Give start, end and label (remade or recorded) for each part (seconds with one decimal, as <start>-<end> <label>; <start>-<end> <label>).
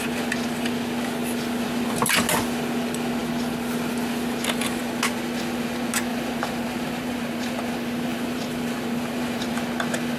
0.0-6.1 recorded; 6.1-7.6 remade; 7.6-8.1 recorded; 8.1-9.5 remade; 9.5-10.2 recorded